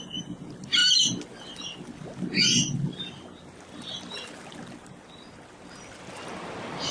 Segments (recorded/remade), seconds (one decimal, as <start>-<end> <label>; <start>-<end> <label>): 0.0-6.9 recorded